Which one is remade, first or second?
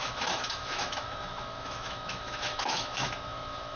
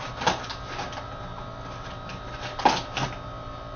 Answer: first